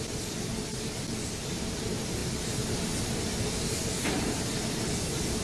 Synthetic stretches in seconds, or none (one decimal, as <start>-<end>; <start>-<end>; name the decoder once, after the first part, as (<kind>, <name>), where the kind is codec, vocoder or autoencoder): none